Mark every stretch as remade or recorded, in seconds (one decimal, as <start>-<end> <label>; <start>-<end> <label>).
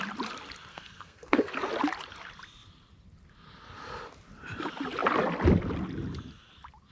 0.0-0.7 recorded; 0.7-1.5 remade; 1.5-6.9 recorded